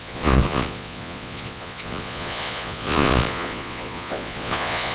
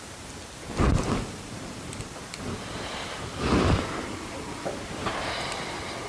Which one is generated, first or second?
first